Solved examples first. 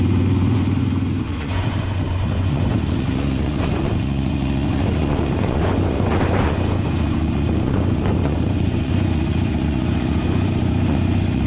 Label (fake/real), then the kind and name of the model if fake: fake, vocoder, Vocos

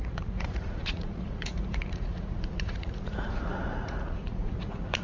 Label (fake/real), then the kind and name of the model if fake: fake, vocoder, Vocos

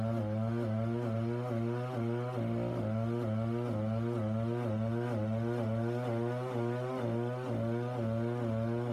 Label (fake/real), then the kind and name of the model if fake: real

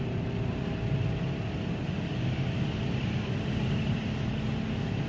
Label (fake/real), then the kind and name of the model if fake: real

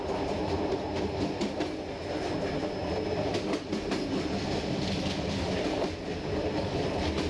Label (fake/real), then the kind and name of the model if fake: real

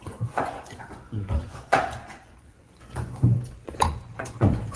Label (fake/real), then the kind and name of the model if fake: fake, vocoder, Vocos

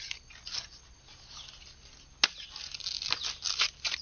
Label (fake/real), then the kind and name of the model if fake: real